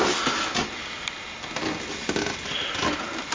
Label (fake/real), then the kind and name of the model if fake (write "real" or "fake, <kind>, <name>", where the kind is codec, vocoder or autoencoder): real